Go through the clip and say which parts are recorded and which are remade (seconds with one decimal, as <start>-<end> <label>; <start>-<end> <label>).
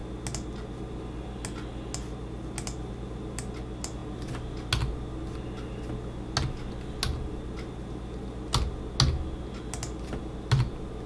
0.0-11.1 recorded